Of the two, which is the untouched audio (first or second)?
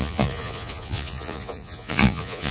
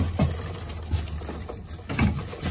second